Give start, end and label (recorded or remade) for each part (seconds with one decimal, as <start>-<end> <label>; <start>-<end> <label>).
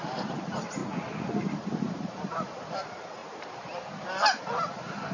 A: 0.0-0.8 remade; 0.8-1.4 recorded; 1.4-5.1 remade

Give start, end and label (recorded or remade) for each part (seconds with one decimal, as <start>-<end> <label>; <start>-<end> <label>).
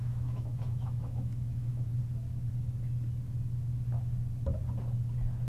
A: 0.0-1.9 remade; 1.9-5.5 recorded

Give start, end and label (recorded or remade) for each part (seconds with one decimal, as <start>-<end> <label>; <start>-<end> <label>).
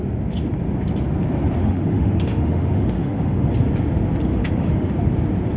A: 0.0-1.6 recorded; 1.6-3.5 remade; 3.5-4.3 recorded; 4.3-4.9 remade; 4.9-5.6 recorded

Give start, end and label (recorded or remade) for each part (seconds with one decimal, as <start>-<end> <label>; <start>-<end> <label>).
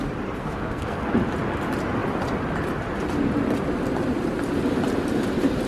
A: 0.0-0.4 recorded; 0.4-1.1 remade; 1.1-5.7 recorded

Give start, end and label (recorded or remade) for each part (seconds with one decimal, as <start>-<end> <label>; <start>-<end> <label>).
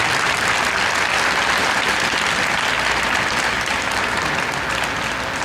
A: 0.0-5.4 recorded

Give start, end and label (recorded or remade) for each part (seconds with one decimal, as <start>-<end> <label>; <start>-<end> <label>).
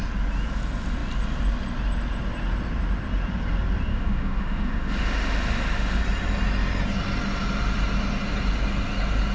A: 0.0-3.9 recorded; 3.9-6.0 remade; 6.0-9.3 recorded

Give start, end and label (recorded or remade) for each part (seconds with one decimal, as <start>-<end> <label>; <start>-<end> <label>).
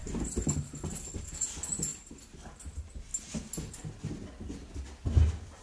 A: 0.0-5.6 recorded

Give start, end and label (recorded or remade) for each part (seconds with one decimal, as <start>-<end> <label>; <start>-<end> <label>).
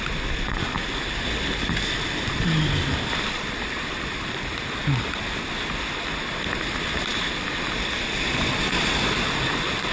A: 0.0-9.9 recorded